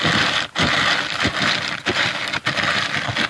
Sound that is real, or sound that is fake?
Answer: real